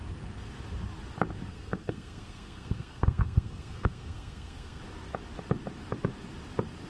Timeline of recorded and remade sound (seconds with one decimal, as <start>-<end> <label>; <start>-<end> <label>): 0.0-1.5 recorded; 1.5-4.8 remade; 4.8-6.9 recorded